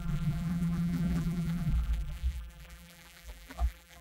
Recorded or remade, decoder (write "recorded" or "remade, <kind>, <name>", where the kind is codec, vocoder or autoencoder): remade, vocoder, BigVGAN v2